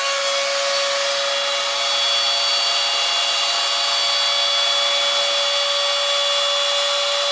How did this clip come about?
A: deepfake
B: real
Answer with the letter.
B